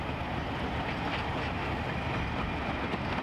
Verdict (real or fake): real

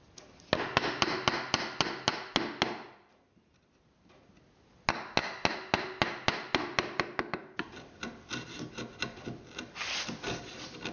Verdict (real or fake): real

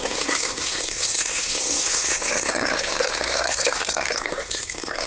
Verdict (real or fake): fake